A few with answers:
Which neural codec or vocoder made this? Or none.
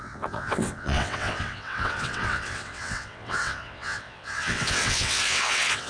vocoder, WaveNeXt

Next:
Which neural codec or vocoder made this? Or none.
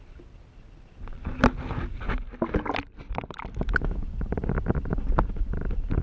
none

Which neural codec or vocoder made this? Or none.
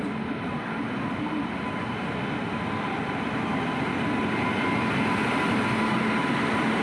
none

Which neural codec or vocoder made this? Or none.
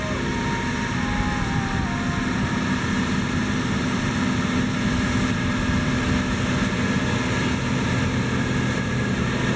none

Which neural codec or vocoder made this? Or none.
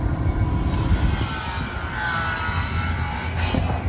none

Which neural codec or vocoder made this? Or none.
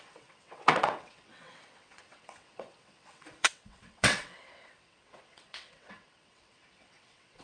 vocoder, WaveNeXt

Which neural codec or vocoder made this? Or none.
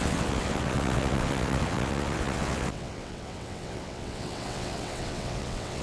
vocoder, WaveNeXt